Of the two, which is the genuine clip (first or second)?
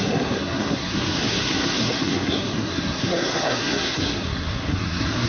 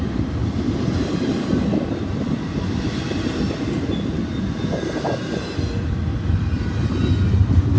second